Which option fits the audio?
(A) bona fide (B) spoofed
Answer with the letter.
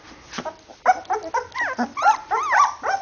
A